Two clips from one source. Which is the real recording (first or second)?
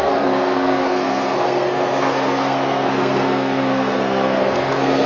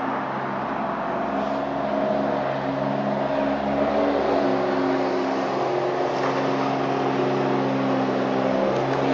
second